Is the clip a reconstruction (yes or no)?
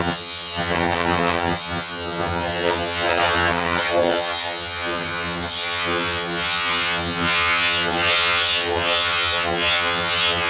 yes